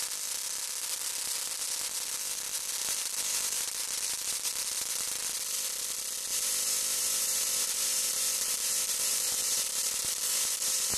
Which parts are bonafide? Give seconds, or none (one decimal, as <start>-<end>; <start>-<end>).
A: 0.0-2.8; 5.3-6.3